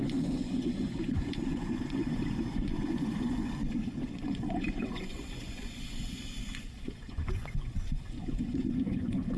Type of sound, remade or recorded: remade